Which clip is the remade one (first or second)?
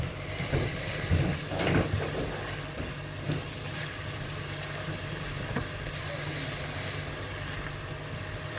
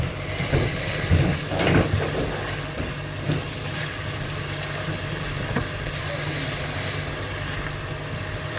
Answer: first